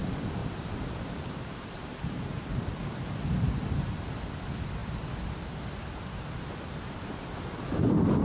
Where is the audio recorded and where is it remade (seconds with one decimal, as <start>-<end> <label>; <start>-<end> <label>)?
0.0-0.4 recorded; 0.4-4.2 remade; 4.2-8.2 recorded